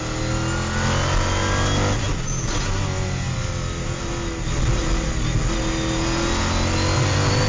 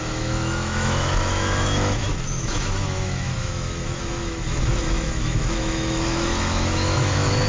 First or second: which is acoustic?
first